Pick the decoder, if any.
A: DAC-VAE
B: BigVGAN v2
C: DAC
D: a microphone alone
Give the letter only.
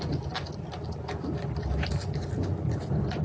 D